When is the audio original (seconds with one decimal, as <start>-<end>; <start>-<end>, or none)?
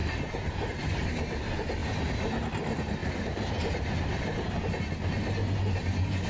0.7-1.8; 2.4-3.0; 4.5-6.3